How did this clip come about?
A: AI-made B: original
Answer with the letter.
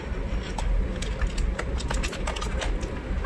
B